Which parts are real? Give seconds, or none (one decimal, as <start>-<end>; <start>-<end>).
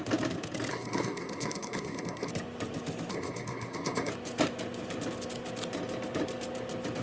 0.0-0.7; 2.3-3.1; 4.1-7.0